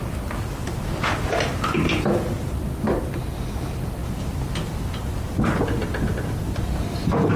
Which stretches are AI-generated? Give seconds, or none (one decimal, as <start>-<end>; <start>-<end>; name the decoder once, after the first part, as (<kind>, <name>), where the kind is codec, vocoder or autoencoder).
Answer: 0.6-2.4 (vocoder, BigVGAN v2); 4.0-6.7